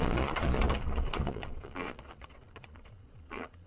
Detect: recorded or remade remade